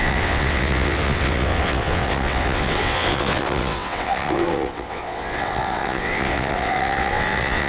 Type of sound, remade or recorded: remade